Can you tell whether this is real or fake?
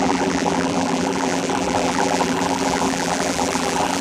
fake